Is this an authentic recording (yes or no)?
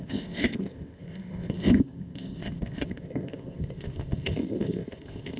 no